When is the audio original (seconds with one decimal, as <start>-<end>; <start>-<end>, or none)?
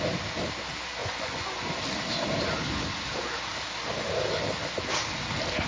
0.0-1.0; 1.6-5.7